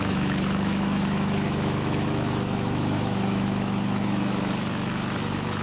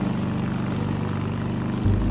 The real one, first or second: second